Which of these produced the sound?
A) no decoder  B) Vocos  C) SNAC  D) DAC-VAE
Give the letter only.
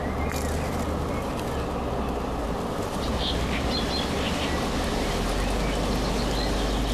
A